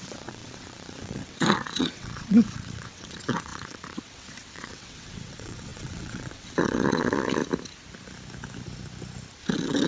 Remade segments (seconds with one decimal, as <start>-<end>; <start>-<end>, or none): 0.0-7.4; 9.4-9.9